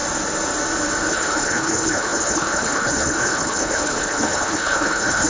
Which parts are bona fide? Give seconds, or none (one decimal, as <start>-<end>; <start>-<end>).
0.0-1.1